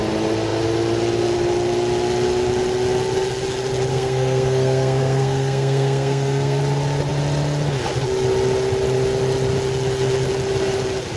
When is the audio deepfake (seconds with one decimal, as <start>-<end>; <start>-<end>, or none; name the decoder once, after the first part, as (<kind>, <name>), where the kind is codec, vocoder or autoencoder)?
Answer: 3.9-6.6 (codec, SNAC)